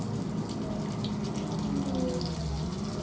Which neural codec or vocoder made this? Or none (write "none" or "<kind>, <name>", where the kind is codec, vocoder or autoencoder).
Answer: none